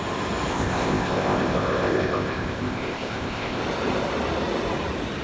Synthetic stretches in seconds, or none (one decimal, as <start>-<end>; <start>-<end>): 0.5-3.6